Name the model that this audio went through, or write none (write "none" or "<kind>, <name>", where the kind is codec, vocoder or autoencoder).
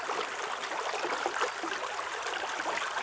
none